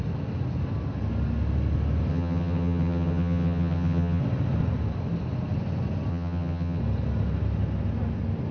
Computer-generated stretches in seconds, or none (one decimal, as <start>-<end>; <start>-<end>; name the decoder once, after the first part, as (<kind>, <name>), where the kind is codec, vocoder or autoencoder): 2.1-4.2 (vocoder, HiFi-GAN); 6.1-6.8